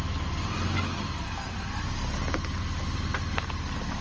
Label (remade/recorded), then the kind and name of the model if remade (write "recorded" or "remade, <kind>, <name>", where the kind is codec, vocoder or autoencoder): recorded